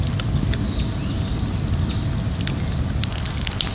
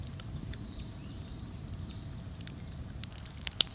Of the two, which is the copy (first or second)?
second